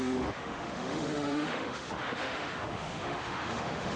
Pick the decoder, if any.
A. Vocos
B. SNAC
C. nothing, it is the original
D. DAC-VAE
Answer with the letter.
D